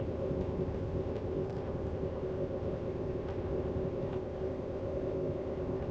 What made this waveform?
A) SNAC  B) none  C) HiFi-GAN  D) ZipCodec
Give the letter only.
D